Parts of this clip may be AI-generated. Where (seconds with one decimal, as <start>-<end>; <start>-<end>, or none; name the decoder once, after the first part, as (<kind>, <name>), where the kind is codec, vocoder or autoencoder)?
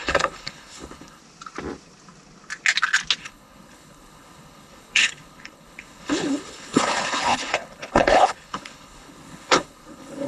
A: 0.0-1.2 (codec, HILCodec); 3.2-10.3